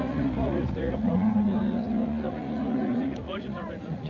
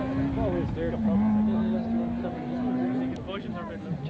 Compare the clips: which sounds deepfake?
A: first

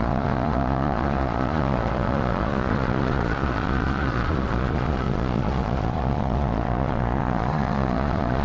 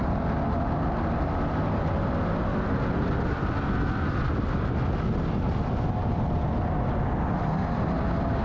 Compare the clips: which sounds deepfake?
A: first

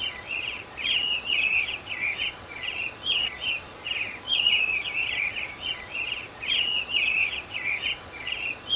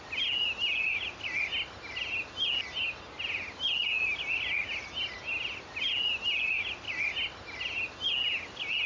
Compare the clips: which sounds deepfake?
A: first